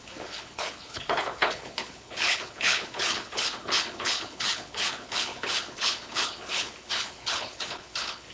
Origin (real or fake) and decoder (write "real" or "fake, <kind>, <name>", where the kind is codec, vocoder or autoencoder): fake, codec, HILCodec